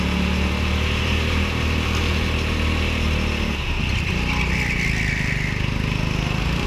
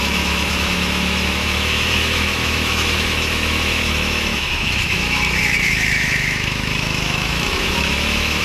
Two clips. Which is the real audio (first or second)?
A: first